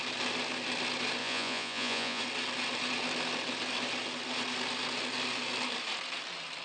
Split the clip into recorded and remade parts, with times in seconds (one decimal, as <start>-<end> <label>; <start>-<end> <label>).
0.0-1.2 recorded; 1.2-2.2 remade; 2.2-6.6 recorded

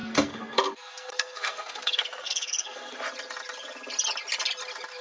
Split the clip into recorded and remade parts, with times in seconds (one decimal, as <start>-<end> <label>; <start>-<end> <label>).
0.0-3.0 remade; 3.0-5.0 recorded

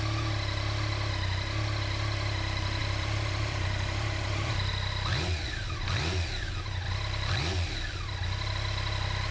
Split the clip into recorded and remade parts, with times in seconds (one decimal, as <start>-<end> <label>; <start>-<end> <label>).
0.0-2.8 recorded; 2.8-4.7 remade; 4.7-9.3 recorded

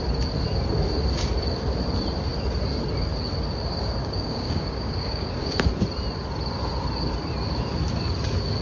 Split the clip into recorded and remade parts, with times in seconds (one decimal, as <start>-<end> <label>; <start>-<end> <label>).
0.0-4.0 recorded; 4.0-5.7 remade; 5.7-8.6 recorded

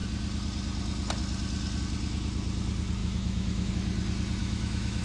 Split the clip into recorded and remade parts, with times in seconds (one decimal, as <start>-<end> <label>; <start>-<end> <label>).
0.0-3.0 recorded; 3.0-3.7 remade; 3.7-4.4 recorded; 4.4-5.0 remade

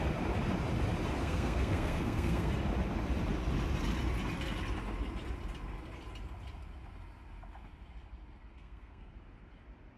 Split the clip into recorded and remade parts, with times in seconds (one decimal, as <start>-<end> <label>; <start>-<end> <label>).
0.0-1.2 recorded; 1.2-2.5 remade; 2.5-8.5 recorded; 8.5-9.1 remade; 9.1-10.0 recorded

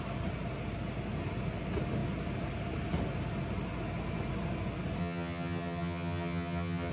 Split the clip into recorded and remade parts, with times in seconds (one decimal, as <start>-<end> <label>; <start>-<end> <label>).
0.0-5.0 recorded; 5.0-6.9 remade